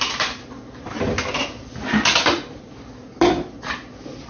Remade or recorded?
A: recorded